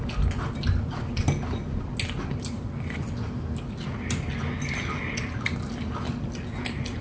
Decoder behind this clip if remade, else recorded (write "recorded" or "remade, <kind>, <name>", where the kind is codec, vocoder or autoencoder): recorded